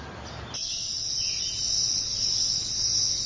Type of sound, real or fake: real